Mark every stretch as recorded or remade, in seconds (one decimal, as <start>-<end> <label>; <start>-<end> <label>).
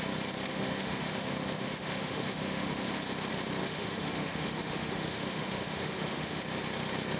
0.0-0.5 recorded; 0.5-2.9 remade; 2.9-3.6 recorded; 3.6-6.4 remade; 6.4-7.2 recorded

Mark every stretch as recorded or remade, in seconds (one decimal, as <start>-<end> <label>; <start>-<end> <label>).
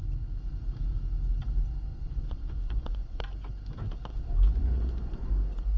0.0-1.9 recorded; 1.9-3.2 remade; 3.2-4.6 recorded; 4.6-5.3 remade; 5.3-5.8 recorded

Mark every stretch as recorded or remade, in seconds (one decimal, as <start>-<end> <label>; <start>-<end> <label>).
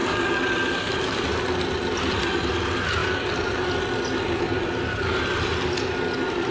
0.0-3.0 recorded; 3.0-3.7 remade; 3.7-6.5 recorded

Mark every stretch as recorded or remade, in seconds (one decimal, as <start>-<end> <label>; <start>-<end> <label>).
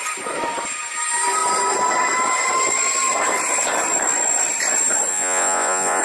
0.0-5.1 recorded; 5.1-6.0 remade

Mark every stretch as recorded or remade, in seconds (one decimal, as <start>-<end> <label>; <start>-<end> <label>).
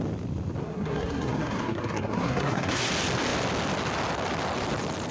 0.0-0.6 recorded; 0.6-2.9 remade; 2.9-5.1 recorded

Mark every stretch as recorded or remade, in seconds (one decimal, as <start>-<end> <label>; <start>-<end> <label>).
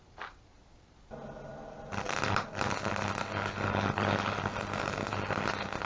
0.0-5.9 recorded